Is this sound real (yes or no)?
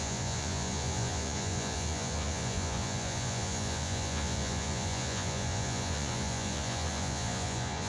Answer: no